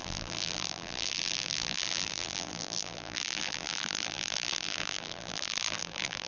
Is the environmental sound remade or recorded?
remade